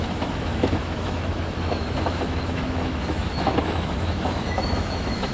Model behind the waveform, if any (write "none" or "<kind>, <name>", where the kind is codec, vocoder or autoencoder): autoencoder, DAC-VAE